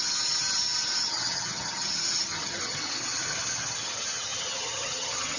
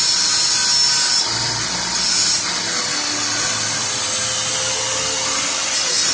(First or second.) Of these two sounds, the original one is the second